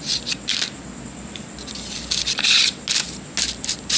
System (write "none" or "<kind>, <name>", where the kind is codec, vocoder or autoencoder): none